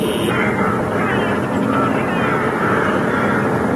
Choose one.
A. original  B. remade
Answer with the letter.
A